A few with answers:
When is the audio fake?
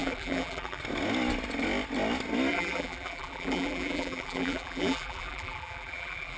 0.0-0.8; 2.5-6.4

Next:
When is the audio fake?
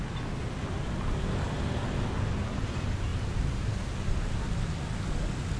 3.1-3.9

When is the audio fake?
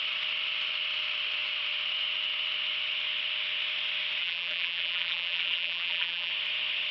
4.2-6.3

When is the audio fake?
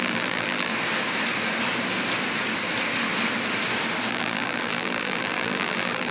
0.0-0.7; 4.1-6.1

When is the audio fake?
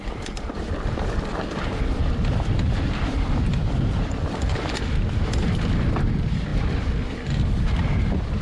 0.0-8.4